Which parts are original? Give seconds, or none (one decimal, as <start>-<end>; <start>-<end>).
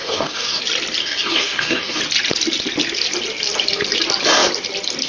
0.6-1.0; 2.0-5.1